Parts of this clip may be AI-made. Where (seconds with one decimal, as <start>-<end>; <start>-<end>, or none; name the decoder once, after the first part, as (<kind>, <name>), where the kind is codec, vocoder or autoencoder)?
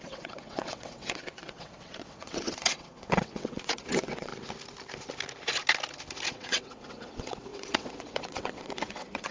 0.0-4.3 (vocoder, WaveNeXt); 6.3-9.3